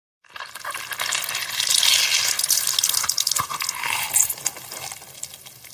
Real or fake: real